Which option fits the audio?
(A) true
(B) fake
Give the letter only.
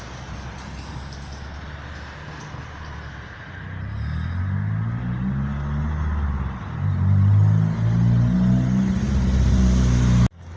A